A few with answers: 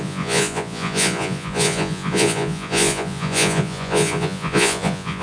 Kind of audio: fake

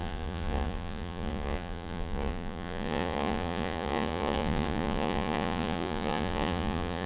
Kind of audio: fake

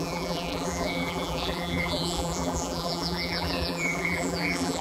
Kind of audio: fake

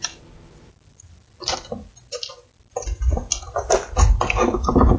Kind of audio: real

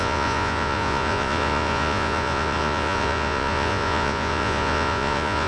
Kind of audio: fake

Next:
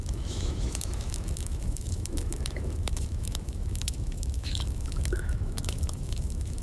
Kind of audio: fake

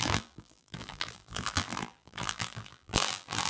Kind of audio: fake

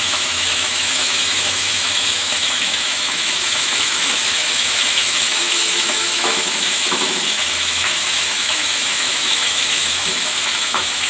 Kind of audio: fake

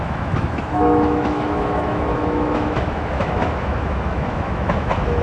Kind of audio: fake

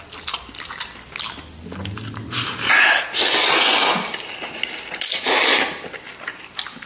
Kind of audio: real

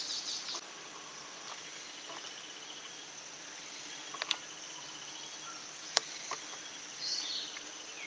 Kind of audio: real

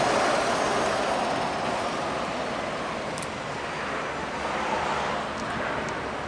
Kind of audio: real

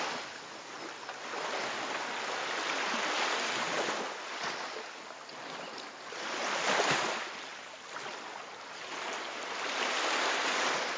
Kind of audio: real